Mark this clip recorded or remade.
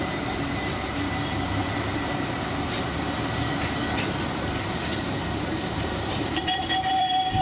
remade